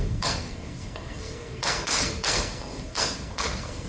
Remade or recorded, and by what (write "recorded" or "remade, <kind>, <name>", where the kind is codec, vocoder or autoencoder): remade, codec, SNAC